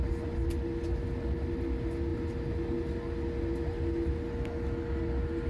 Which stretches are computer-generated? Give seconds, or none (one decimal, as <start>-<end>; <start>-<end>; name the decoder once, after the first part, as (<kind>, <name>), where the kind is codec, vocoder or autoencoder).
none